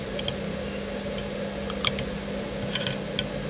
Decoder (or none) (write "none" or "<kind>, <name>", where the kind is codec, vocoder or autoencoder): none